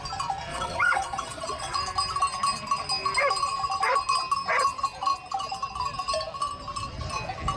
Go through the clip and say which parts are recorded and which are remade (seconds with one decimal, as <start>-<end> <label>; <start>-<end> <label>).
0.0-0.5 recorded; 0.5-1.8 remade; 1.8-7.6 recorded